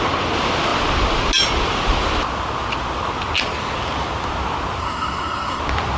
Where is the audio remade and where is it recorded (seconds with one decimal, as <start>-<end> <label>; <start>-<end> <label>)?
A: 0.0-4.8 recorded; 4.8-5.6 remade; 5.6-6.0 recorded